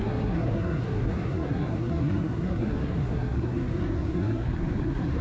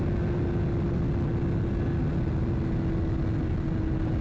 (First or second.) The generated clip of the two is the first